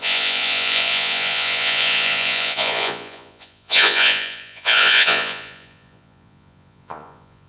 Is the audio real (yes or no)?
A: no